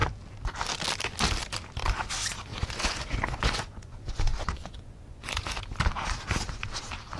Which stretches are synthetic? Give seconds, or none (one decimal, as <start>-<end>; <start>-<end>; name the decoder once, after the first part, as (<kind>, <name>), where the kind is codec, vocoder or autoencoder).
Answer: 2.5-5.6 (vocoder, Vocos)